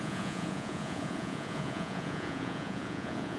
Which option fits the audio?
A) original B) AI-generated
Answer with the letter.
B